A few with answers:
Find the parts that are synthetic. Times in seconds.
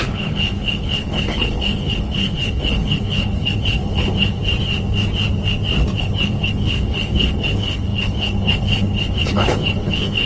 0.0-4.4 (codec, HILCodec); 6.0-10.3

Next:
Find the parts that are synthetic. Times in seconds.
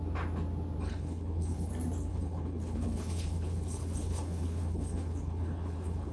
0.9-1.7 (codec, HILCodec); 2.1-6.1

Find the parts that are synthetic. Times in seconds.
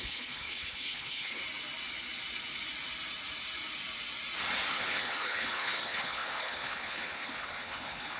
0.0-1.4 (codec, HILCodec); 4.7-8.2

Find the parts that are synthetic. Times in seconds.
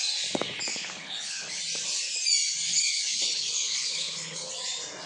0.7-1.6 (codec, HILCodec); 2.7-4.5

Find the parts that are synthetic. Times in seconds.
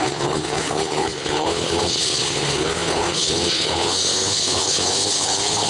0.0-5.7 (codec, HILCodec)